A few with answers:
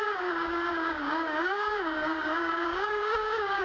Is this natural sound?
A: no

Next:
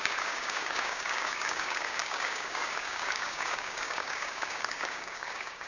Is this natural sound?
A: no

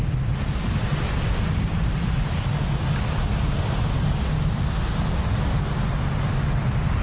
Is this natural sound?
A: yes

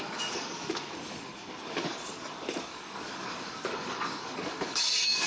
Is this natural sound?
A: no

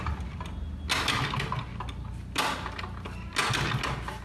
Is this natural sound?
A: yes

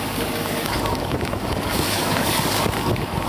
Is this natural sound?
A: no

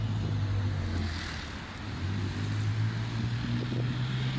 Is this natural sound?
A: yes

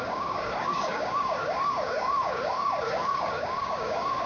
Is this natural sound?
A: no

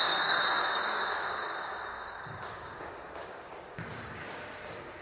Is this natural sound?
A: no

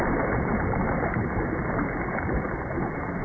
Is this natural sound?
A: yes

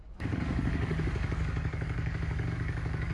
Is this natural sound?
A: no